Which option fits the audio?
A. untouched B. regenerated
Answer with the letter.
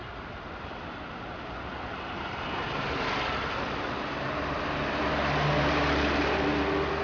A